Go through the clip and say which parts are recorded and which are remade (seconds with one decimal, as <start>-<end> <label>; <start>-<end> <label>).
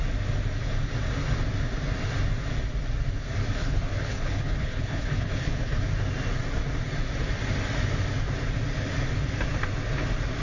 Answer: 0.0-3.4 recorded; 3.4-5.8 remade; 5.8-10.4 recorded